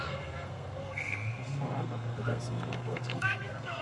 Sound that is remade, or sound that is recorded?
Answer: remade